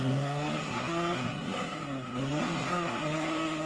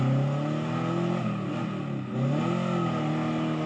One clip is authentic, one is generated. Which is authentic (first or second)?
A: second